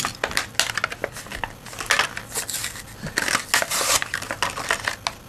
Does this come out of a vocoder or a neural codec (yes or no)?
no